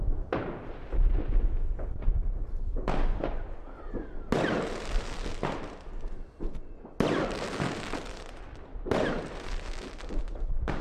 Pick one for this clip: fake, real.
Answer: real